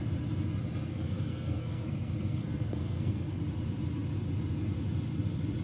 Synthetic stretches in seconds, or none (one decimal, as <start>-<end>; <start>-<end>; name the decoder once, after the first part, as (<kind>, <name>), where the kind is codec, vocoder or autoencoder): 0.9-3.4 (codec, SNAC)